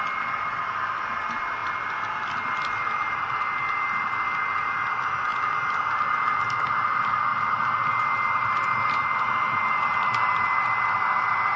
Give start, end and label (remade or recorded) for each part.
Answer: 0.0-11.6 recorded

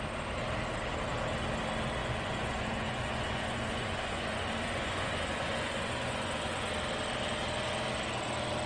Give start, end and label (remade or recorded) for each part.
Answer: 0.0-2.0 recorded; 2.0-6.7 remade; 6.7-8.7 recorded

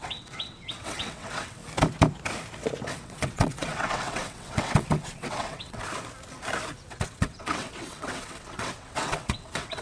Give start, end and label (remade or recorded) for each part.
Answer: 0.0-1.6 remade; 1.6-2.9 recorded; 2.9-5.8 remade; 5.8-6.9 recorded; 6.9-9.8 remade

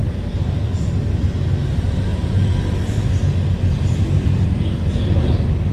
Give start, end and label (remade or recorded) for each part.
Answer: 0.0-2.1 recorded; 2.1-5.0 remade; 5.0-5.7 recorded